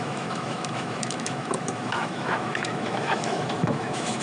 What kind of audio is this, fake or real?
fake